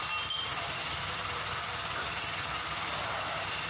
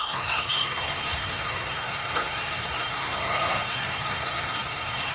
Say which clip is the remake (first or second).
second